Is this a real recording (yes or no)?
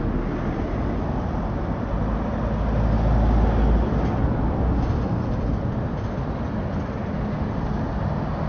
yes